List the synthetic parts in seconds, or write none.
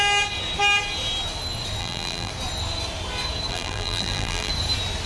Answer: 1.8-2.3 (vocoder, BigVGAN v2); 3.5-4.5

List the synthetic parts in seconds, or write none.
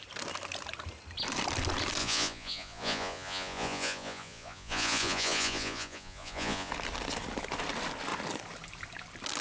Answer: 2.0-6.7 (vocoder, Vocos)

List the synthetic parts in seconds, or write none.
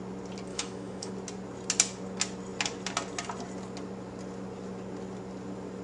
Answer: 0.5-1.1 (autoencoder, DAC-VAE)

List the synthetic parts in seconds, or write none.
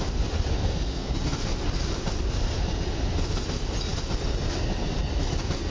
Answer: 0.5-1.1 (codec, SNAC)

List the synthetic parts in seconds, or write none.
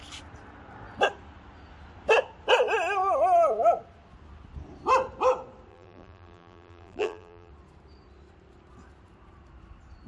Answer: 5.7-7.5 (vocoder, BigVGAN v2)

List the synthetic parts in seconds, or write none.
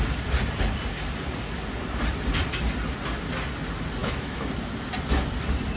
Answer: 4.0-4.5 (autoencoder, DAC-VAE)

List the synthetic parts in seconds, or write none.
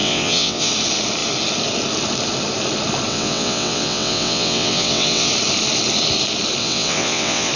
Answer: 0.0-0.7 (vocoder, WaveNeXt); 3.1-5.3; 6.6-7.5